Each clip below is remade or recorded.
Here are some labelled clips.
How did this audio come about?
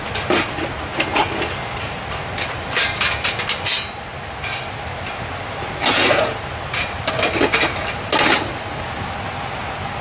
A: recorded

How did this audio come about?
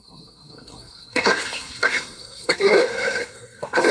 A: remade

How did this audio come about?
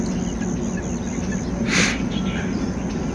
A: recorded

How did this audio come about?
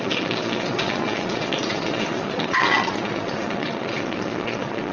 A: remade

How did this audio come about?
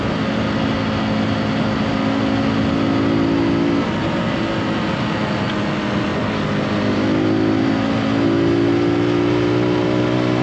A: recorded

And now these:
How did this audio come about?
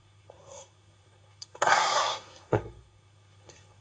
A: remade